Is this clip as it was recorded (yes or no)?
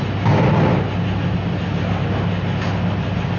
yes